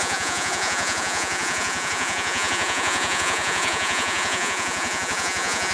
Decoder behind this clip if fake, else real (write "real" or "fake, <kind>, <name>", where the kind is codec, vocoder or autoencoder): fake, vocoder, Vocos